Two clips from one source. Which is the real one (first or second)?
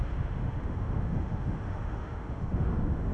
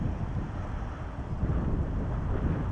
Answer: second